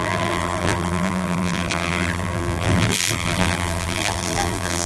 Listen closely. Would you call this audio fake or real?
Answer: fake